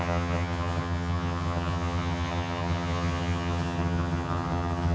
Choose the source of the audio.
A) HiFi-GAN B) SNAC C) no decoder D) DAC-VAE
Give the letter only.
A